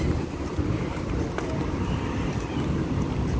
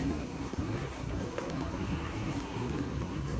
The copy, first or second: second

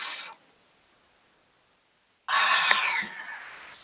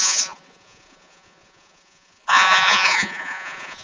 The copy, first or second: second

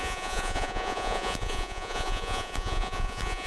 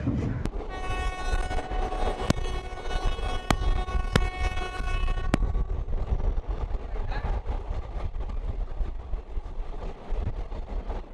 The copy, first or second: first